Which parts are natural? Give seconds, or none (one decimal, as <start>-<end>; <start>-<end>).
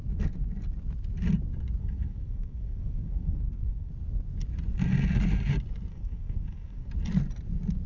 0.0-1.8; 3.9-5.9; 6.9-7.9